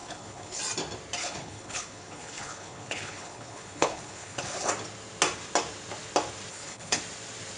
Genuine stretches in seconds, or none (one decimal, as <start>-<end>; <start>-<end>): 0.6-1.2; 4.7-6.5; 7.0-7.6